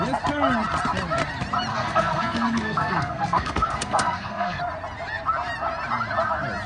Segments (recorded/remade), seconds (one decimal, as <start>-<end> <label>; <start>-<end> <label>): 0.0-1.7 recorded; 1.7-4.6 remade; 4.6-6.7 recorded